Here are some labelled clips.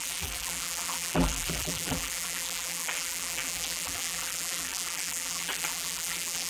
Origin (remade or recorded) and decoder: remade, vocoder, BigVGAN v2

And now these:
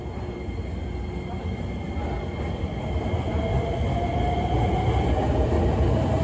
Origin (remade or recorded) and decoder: recorded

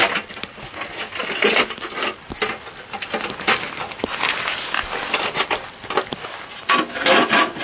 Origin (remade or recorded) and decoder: recorded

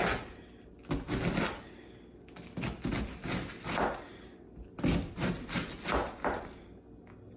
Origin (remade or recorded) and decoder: recorded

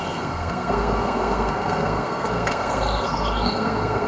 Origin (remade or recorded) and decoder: remade, codec, SNAC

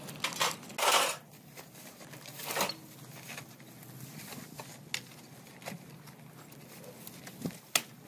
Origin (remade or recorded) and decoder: recorded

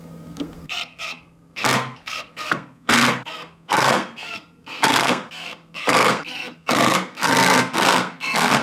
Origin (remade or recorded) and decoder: remade, codec, SNAC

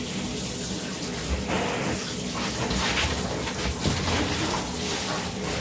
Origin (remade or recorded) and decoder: recorded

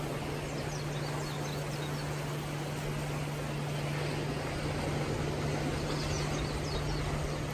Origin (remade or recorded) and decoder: recorded